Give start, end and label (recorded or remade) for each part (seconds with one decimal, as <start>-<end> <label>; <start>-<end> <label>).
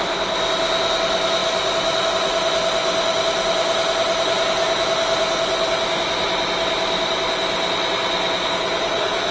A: 0.0-9.3 recorded